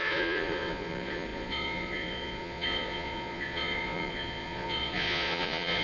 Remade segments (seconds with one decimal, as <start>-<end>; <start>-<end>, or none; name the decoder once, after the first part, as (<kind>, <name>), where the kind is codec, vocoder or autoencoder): 0.0-5.8 (vocoder, Vocos)